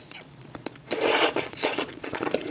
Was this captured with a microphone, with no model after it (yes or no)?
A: no